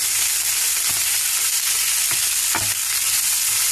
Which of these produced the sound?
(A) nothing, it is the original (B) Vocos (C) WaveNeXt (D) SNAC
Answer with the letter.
A